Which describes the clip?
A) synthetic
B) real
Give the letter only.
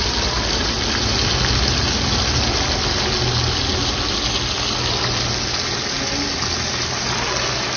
B